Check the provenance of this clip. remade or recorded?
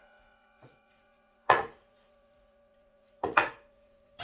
remade